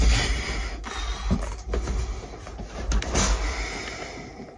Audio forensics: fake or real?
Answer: real